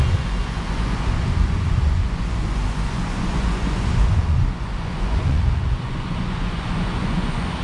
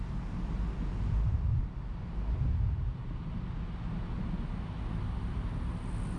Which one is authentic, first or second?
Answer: second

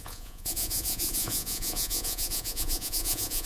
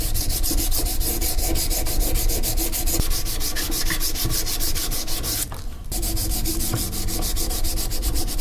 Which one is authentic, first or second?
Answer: second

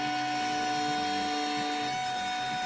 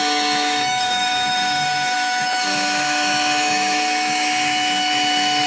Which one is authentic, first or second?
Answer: first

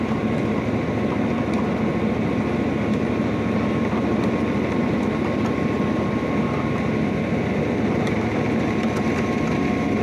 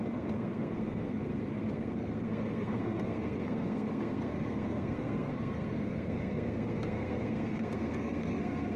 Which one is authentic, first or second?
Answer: first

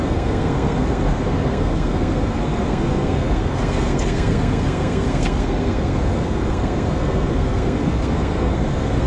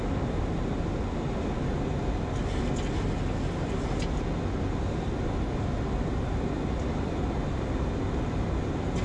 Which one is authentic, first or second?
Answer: second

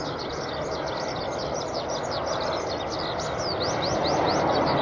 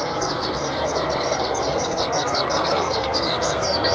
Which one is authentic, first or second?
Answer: first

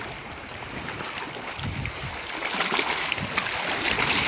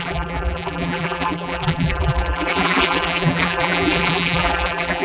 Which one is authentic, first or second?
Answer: first